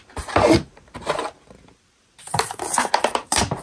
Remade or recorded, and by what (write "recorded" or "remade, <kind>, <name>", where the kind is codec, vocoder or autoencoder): remade, vocoder, BigVGAN v2